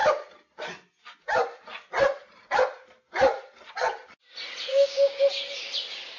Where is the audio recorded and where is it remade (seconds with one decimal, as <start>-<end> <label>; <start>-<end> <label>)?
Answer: 0.0-4.7 recorded; 4.7-5.2 remade; 5.2-6.2 recorded